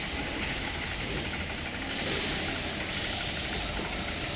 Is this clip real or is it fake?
real